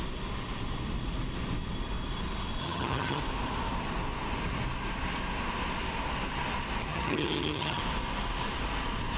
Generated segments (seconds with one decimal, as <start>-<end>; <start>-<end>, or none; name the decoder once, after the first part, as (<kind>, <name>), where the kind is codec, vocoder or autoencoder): 2.6-3.2 (vocoder, HiFi-GAN); 6.9-7.8